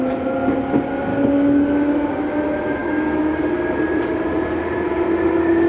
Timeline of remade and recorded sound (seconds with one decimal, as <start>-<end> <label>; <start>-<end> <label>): 0.0-1.1 recorded; 1.1-2.2 remade; 2.2-2.8 recorded; 2.8-3.4 remade; 3.4-5.7 recorded

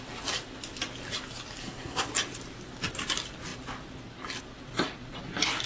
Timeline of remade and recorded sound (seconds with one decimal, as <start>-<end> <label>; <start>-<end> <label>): 0.0-1.6 recorded; 1.6-2.1 remade; 2.1-5.7 recorded